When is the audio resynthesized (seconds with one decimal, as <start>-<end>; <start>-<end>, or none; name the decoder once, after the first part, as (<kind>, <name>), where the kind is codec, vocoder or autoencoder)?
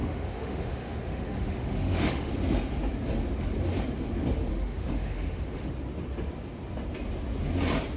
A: 0.0-2.3 (autoencoder, DAC-VAE); 4.5-5.7